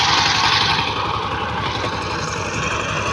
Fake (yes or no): no